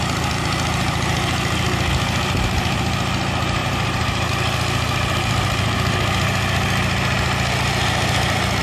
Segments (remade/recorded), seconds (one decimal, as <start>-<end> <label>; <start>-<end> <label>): 0.0-3.6 recorded; 3.6-4.3 remade; 4.3-8.6 recorded